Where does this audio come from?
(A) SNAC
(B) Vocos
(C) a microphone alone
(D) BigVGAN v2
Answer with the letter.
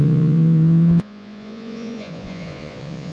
B